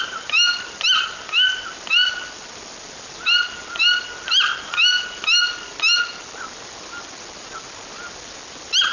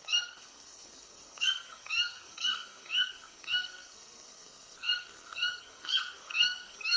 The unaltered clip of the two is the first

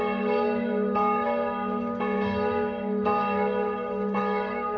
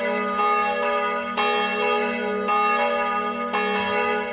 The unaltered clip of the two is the second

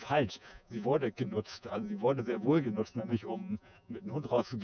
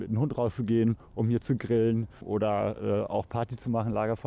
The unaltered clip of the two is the second